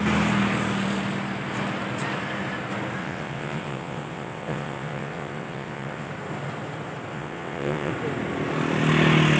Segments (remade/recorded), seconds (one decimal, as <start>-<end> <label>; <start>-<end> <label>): 0.0-3.0 recorded; 3.0-6.1 remade; 6.1-7.1 recorded; 7.1-7.9 remade; 7.9-9.4 recorded